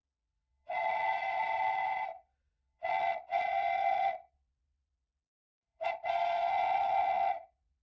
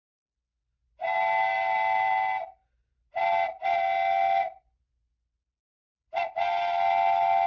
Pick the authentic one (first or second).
second